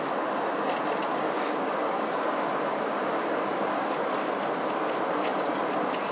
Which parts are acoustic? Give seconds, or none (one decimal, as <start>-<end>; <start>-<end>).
0.0-1.1; 3.9-6.1